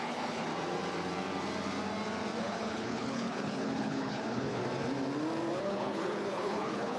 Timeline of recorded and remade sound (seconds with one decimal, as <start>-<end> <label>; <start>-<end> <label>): 0.0-0.5 remade; 0.5-2.4 recorded; 2.4-4.6 remade; 4.6-5.6 recorded; 5.6-7.0 remade